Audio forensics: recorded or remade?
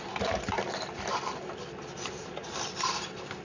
remade